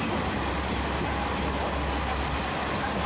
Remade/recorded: recorded